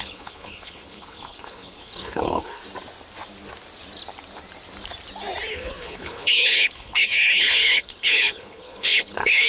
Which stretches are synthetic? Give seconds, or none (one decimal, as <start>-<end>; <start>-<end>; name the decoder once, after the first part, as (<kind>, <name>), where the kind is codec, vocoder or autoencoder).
0.0-2.6 (codec, HILCodec); 5.5-9.5